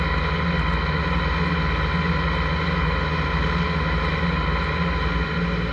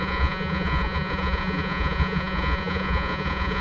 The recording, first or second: first